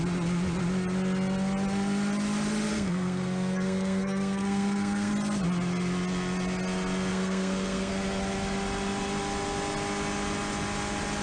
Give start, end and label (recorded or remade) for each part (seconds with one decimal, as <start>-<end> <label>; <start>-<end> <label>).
0.0-2.7 recorded; 2.7-5.1 remade; 5.1-7.1 recorded; 7.1-7.9 remade; 7.9-11.2 recorded